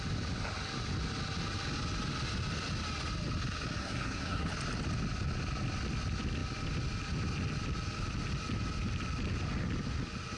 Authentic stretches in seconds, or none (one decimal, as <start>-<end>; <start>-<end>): 0.0-3.8; 4.5-10.4

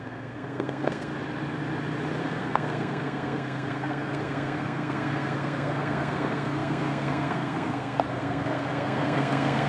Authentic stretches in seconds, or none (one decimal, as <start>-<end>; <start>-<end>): 1.1-2.2

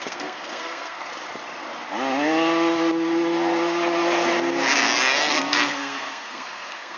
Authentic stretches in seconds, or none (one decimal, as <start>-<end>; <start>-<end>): 1.1-5.3

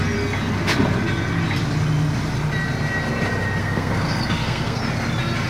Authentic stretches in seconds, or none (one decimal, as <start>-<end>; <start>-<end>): 0.0-3.6; 4.8-5.5

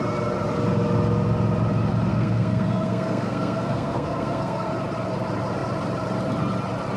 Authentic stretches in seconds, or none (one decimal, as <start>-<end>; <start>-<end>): 0.0-2.1; 4.7-7.0